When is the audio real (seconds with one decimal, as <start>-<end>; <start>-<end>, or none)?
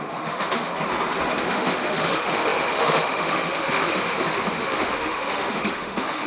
0.7-1.4